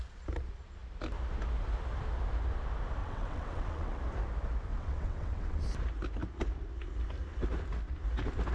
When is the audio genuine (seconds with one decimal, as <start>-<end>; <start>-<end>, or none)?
0.0-3.0; 4.0-4.7; 5.6-8.5